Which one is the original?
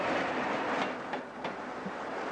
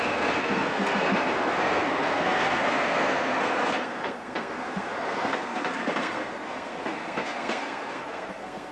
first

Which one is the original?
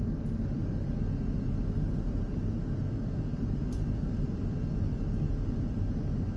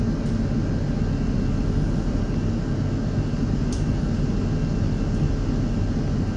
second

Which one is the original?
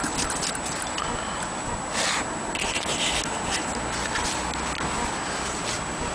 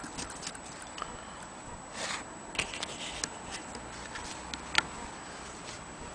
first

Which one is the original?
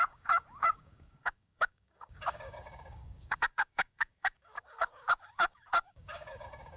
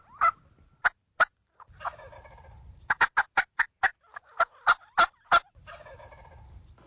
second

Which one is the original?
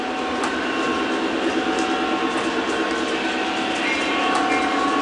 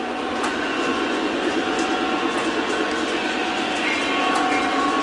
first